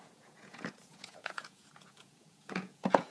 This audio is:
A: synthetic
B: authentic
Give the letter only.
A